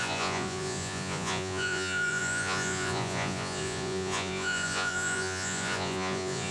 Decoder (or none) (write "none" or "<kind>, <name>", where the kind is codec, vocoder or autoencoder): vocoder, Vocos